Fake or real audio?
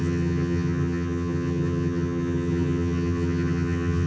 fake